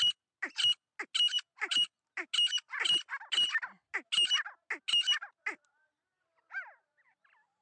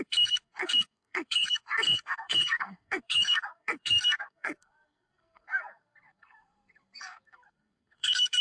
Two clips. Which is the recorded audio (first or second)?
first